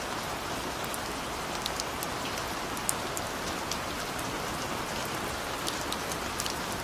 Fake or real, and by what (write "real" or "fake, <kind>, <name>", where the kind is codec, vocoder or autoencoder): real